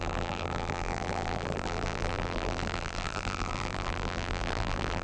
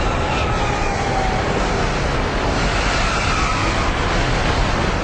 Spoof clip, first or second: first